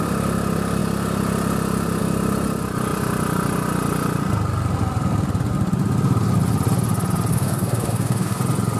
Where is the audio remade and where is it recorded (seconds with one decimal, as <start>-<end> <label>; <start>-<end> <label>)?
0.0-7.3 recorded; 7.3-8.4 remade; 8.4-8.8 recorded